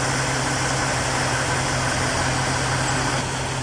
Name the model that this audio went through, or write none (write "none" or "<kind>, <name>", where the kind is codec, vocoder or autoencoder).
none